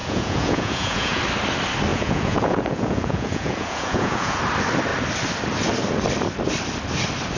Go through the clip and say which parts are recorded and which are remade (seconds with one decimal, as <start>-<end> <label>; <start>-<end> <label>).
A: 0.0-1.2 remade; 1.2-1.9 recorded; 1.9-4.4 remade; 4.4-7.4 recorded